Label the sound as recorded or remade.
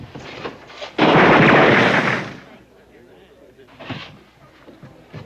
recorded